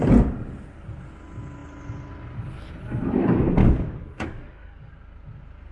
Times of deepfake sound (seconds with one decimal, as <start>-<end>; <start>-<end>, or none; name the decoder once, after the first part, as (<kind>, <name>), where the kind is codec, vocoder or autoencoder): 3.6-4.9 (codec, DAC)